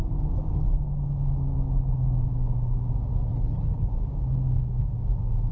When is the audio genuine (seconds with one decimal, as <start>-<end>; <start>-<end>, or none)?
0.0-3.3; 3.9-5.5